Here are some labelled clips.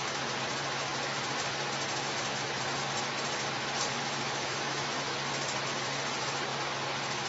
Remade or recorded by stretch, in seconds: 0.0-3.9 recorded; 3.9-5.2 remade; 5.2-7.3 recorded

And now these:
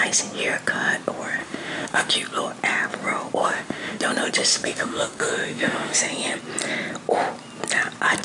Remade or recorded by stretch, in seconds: 0.0-1.4 recorded; 1.4-2.1 remade; 2.1-3.4 recorded; 3.4-4.0 remade; 4.0-4.5 recorded; 4.5-6.0 remade; 6.0-8.2 recorded

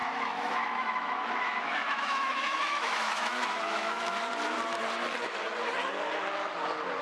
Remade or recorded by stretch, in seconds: 0.0-4.2 remade; 4.2-7.0 recorded

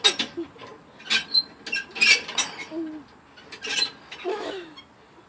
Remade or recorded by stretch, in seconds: 0.0-4.3 recorded; 4.3-4.8 remade; 4.8-5.3 recorded

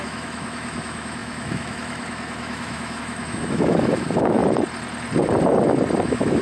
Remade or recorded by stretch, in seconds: 0.0-4.4 remade; 4.4-6.0 recorded; 6.0-6.4 remade

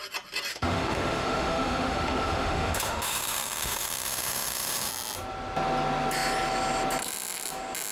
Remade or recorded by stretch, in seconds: 0.0-0.5 recorded; 0.5-4.9 remade; 4.9-7.9 recorded

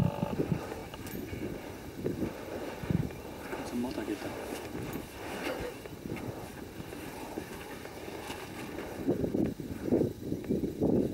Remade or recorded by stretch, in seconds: 0.0-11.1 recorded